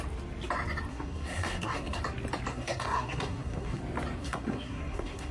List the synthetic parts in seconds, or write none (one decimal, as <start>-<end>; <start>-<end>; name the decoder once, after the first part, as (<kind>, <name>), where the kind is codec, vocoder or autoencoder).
0.9-2.0 (codec, SNAC); 2.5-3.8; 4.2-5.3